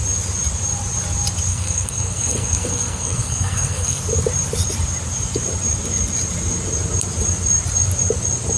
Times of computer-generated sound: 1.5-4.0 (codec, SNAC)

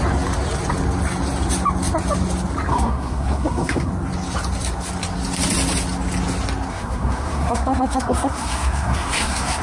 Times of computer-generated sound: 2.7-3.9 (codec, SNAC); 6.7-9.6

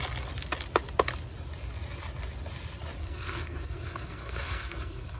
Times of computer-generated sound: 3.0-5.2 (codec, SNAC)

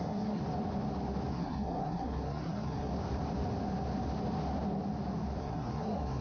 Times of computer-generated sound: 0.0-0.4 (codec, SNAC); 1.3-2.9; 5.4-6.2

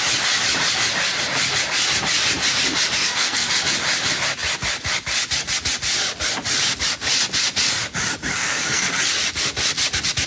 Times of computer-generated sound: 3.0-3.5 (codec, SNAC); 8.3-9.0

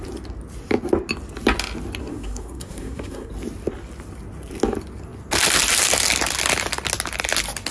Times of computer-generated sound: 2.0-3.3 (codec, SNAC)

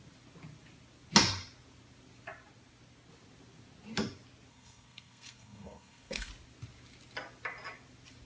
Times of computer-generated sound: 4.5-6.3 (codec, SNAC)